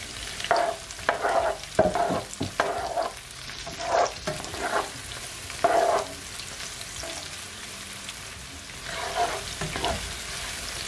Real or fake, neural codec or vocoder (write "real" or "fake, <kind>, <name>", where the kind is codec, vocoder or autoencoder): real